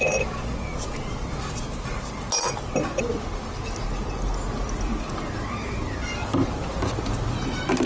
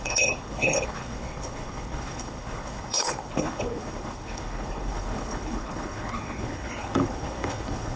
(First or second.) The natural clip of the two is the first